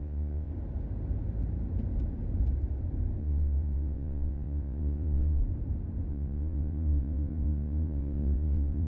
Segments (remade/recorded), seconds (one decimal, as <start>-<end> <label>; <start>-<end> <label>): 0.0-0.5 remade; 0.5-3.2 recorded; 3.2-5.4 remade; 5.4-6.1 recorded; 6.1-8.9 remade